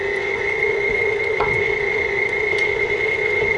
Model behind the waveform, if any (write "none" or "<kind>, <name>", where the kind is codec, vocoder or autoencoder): vocoder, Vocos